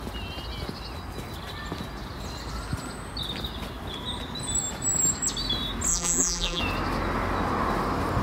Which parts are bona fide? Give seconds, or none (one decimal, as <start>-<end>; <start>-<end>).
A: 0.0-5.9; 6.6-8.2